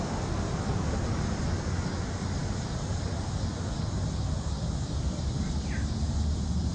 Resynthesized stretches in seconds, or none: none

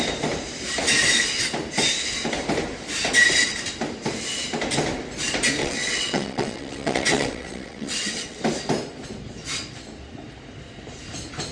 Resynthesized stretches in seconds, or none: 5.6-8.4